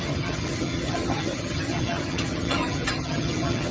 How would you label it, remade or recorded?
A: remade